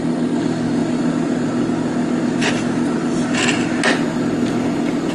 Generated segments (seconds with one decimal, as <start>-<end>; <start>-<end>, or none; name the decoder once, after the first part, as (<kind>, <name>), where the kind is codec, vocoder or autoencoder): none

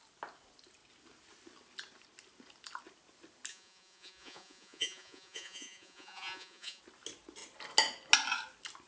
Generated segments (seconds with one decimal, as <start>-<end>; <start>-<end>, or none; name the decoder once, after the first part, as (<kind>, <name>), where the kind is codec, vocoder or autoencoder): 3.5-6.8 (vocoder, Vocos)

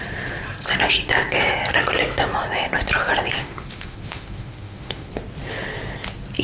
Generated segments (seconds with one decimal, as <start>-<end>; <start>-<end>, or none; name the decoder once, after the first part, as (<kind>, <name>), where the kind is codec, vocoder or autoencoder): 3.4-5.1 (autoencoder, DAC-VAE)

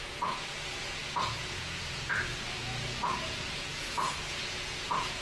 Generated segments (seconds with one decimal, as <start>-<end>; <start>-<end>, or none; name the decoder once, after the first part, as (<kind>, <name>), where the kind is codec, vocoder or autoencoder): 0.0-5.2 (vocoder, Vocos)

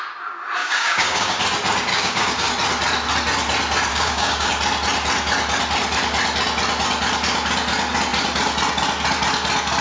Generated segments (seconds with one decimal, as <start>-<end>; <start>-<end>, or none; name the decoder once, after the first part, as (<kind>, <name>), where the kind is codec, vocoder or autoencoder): 0.6-1.4 (codec, DAC); 1.9-2.5; 3.9-4.5

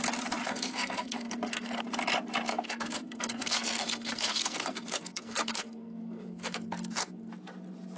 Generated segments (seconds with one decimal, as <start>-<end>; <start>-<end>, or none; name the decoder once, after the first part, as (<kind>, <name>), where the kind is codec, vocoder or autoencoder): 0.4-1.8 (codec, SNAC); 2.5-7.3

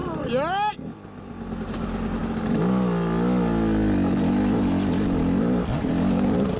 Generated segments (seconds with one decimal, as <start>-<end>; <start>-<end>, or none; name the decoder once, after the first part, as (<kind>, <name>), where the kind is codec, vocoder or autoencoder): none

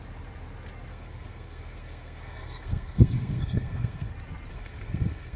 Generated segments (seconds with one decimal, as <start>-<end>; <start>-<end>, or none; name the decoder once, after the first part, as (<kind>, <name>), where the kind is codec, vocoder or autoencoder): 0.9-4.1 (codec, SNAC); 4.5-5.4